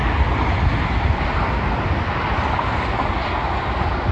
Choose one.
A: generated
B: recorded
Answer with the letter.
B